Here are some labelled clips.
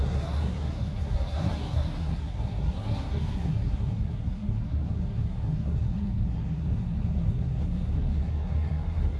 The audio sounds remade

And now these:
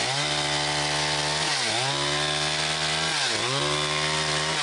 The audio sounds recorded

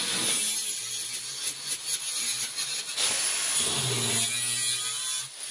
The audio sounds recorded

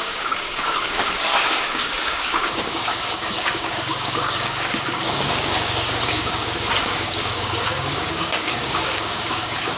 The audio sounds remade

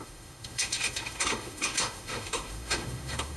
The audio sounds remade